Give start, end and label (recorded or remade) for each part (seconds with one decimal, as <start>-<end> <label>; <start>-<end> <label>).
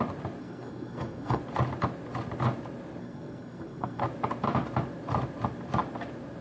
0.0-0.4 recorded; 0.4-1.4 remade; 1.4-3.0 recorded; 3.0-4.0 remade; 4.0-6.4 recorded